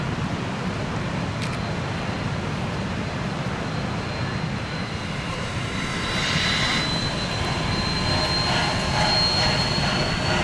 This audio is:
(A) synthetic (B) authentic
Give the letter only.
B